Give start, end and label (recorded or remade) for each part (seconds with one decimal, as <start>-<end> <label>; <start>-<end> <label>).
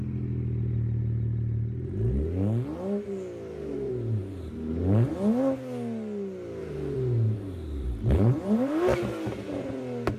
0.0-3.7 recorded; 3.7-5.1 remade; 5.1-6.6 recorded; 6.6-9.7 remade; 9.7-10.2 recorded